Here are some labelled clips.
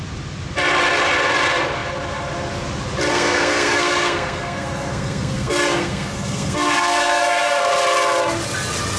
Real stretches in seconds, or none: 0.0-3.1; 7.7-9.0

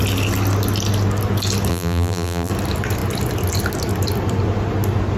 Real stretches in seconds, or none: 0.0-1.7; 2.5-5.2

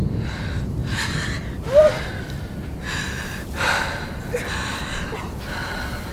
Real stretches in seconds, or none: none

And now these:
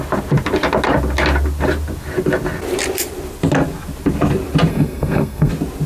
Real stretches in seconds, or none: 0.0-4.7; 5.5-5.9